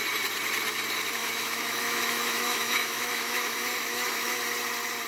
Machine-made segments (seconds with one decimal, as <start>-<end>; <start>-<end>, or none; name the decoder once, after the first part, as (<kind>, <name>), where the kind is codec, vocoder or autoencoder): 1.2-4.3 (autoencoder, DAC-VAE)